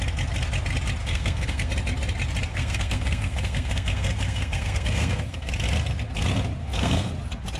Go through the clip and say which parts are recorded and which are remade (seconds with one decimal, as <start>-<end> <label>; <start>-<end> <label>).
0.0-1.0 recorded; 1.0-1.7 remade; 1.7-2.5 recorded; 2.5-5.5 remade; 5.5-6.6 recorded; 6.6-7.1 remade; 7.1-7.6 recorded